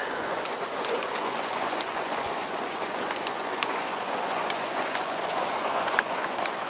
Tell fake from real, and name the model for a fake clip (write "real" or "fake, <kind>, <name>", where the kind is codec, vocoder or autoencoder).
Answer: fake, vocoder, Vocos